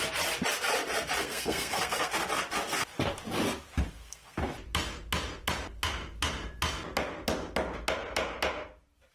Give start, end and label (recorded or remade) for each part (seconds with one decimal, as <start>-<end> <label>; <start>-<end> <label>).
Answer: 0.0-1.2 recorded; 1.2-2.1 remade; 2.1-3.9 recorded; 3.9-4.4 remade; 4.4-9.1 recorded